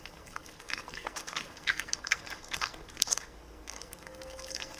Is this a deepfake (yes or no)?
yes